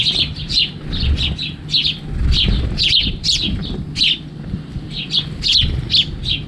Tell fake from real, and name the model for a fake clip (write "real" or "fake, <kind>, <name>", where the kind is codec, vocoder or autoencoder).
real